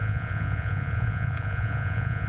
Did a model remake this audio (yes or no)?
yes